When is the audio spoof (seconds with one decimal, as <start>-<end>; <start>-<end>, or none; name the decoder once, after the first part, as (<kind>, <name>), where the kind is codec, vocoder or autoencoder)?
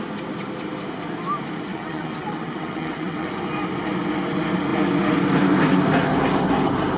1.7-3.3 (vocoder, WaveNeXt)